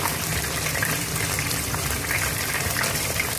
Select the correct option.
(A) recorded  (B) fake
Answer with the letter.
B